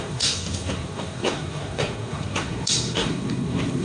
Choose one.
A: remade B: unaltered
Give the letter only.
A